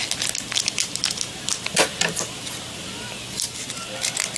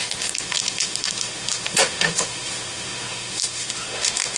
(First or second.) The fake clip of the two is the second